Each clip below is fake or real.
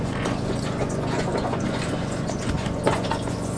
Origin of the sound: fake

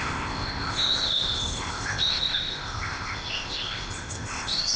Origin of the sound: fake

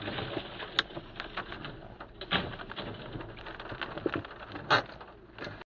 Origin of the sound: real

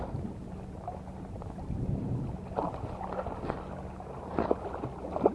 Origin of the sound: real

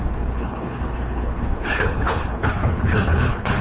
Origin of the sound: fake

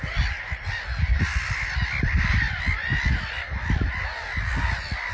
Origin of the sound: real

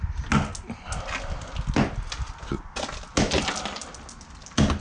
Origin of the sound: real